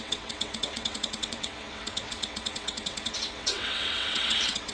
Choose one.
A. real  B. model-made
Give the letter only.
B